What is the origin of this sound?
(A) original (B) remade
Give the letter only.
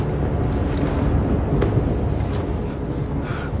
A